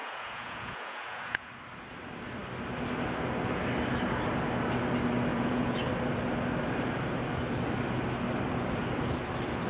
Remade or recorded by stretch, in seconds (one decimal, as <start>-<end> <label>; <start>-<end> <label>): 0.0-1.5 remade; 1.5-5.3 recorded; 5.3-5.9 remade; 5.9-9.7 recorded